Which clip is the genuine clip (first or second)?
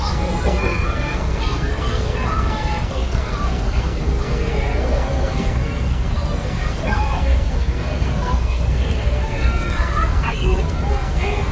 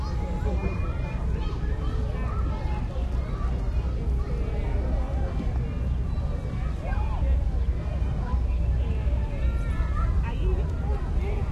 second